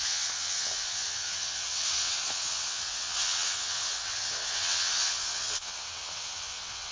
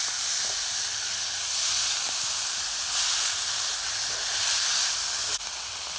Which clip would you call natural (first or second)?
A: second